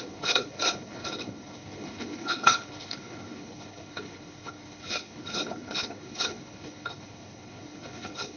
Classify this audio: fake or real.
fake